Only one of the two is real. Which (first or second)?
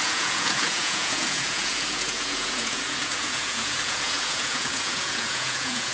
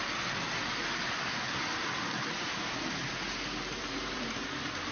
second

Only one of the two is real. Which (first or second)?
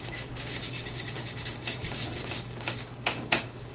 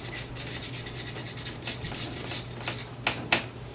second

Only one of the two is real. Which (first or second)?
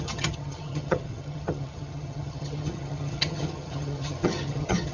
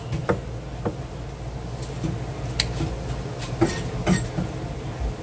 second